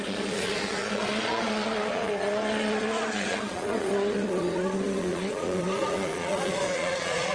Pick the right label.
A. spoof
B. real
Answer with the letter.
A